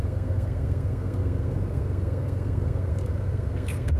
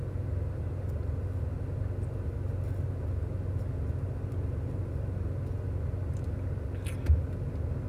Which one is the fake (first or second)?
first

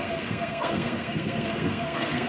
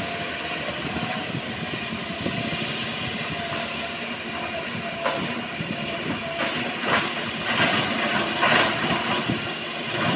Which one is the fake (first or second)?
first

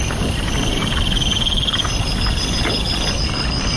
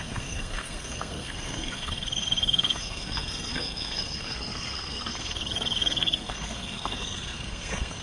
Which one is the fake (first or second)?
second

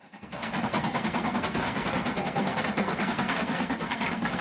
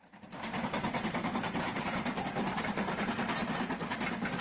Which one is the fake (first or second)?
first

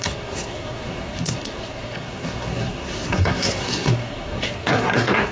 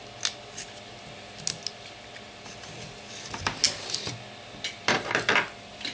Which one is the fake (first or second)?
first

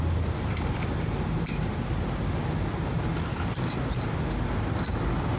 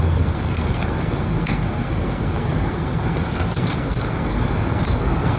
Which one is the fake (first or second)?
second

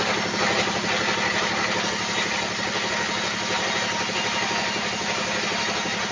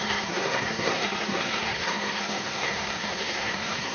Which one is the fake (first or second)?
second